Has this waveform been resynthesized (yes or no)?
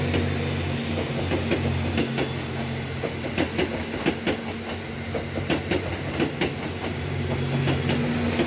no